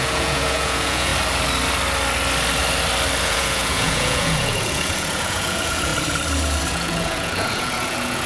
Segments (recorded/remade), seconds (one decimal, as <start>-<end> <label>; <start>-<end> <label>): 0.0-1.1 remade; 1.1-3.2 recorded; 3.2-5.9 remade; 5.9-6.7 recorded; 6.7-8.3 remade